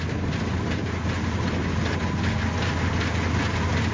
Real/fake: real